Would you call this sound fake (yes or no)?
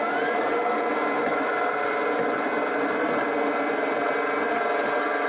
no